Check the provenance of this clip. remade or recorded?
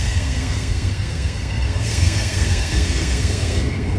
remade